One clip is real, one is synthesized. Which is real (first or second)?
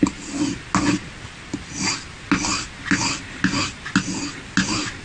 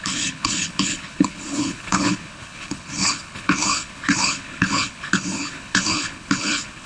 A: first